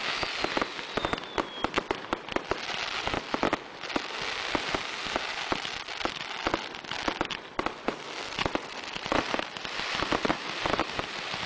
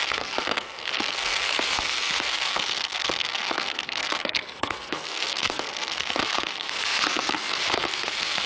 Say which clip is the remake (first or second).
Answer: second